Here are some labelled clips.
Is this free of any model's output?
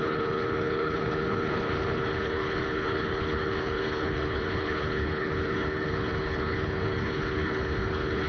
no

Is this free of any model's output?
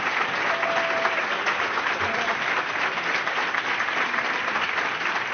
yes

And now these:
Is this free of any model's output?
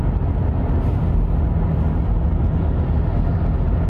yes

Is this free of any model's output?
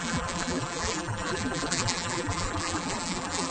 no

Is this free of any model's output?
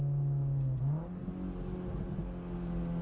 yes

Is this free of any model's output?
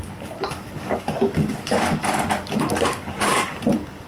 no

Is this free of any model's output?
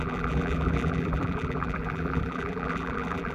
no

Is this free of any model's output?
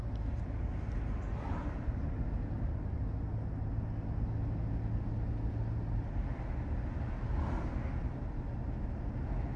yes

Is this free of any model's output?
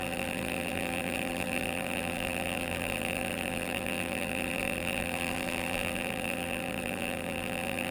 no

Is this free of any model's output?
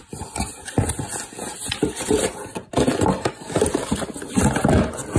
yes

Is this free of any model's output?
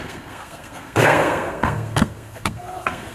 no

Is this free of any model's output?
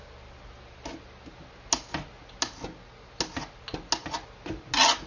yes